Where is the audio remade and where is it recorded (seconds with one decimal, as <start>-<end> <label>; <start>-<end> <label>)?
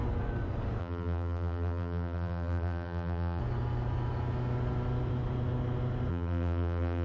0.0-0.8 recorded; 0.8-3.4 remade; 3.4-6.1 recorded; 6.1-7.0 remade